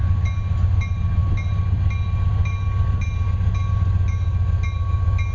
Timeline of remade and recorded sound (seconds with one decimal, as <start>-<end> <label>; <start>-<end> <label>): 0.0-5.3 recorded